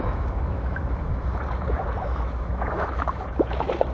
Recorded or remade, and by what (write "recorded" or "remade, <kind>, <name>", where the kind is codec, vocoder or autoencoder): remade, autoencoder, DAC-VAE